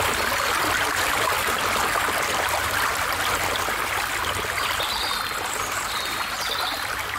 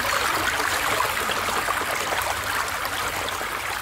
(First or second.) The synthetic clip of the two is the first